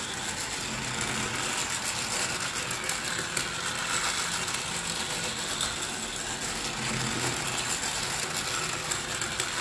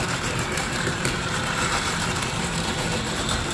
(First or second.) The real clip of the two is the first